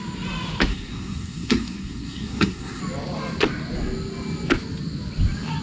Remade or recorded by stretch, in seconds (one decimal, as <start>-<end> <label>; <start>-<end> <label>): 0.0-0.7 recorded; 0.7-2.8 remade; 2.8-5.6 recorded